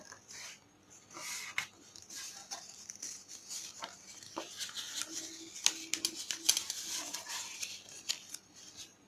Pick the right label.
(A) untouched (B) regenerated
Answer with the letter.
A